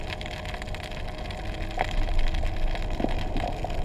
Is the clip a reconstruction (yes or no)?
no